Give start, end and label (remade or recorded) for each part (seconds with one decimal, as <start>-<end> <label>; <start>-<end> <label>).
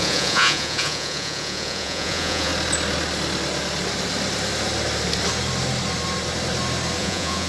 0.0-2.5 remade; 2.5-7.0 recorded; 7.0-7.5 remade